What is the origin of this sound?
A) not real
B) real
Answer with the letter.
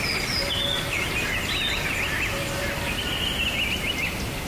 B